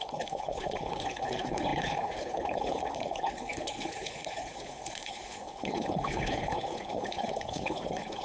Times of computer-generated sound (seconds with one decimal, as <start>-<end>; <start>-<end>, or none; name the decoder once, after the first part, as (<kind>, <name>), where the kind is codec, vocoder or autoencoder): 0.0-8.2 (codec, HILCodec)